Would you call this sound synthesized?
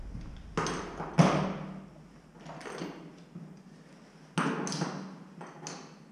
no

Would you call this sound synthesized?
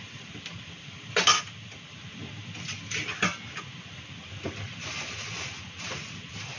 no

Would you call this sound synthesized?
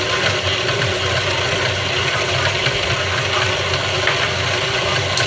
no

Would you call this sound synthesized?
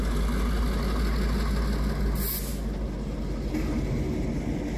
no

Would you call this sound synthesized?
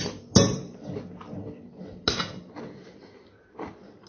no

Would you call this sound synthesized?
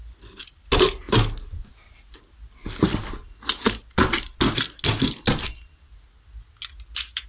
no